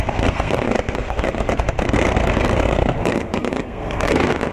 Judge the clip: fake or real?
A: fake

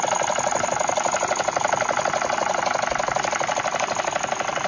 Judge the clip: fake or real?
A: real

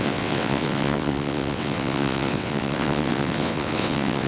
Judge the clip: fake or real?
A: fake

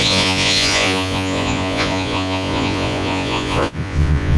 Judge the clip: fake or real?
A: fake